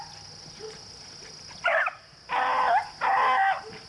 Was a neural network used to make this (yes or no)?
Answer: no